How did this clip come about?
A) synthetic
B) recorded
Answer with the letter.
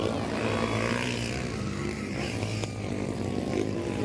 B